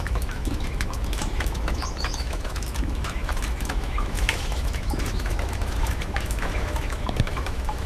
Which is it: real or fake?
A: fake